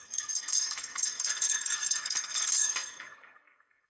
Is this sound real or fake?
fake